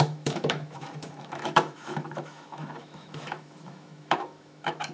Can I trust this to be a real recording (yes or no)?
no